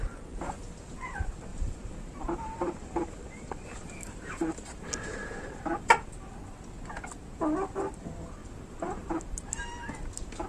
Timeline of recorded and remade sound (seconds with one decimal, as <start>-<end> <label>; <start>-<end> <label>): 0.0-1.5 recorded; 1.5-6.3 remade; 6.3-8.4 recorded; 8.4-9.5 remade; 9.5-10.5 recorded

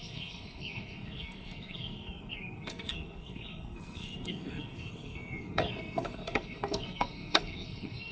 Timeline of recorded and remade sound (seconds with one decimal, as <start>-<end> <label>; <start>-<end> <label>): 0.0-8.1 remade

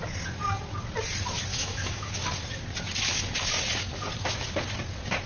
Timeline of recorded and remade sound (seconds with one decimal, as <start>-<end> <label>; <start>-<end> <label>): 0.0-1.5 recorded; 1.5-2.1 remade; 2.1-5.3 recorded